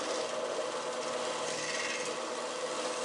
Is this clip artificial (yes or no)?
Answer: no